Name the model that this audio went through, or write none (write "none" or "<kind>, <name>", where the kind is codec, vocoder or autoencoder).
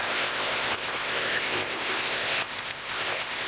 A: codec, ZipCodec